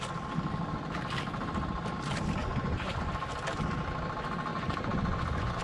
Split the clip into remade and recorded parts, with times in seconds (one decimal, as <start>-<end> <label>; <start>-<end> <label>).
0.0-2.4 recorded; 2.4-3.1 remade; 3.1-4.5 recorded; 4.5-5.6 remade